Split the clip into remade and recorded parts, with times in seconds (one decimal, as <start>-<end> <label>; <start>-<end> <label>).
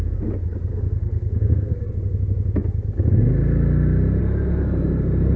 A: 0.0-0.7 recorded; 0.7-1.8 remade; 1.8-5.4 recorded